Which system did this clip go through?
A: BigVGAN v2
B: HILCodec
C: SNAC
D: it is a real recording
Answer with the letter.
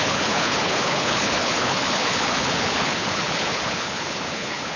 B